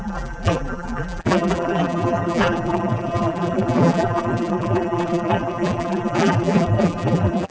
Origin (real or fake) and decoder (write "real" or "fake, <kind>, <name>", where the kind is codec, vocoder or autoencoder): fake, vocoder, BigVGAN v2